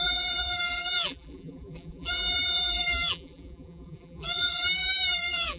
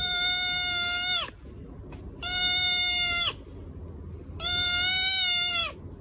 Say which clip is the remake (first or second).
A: first